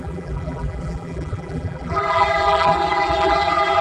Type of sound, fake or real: fake